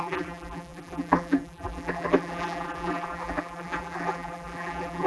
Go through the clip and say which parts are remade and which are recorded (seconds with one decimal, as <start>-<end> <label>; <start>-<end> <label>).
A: 0.0-5.1 remade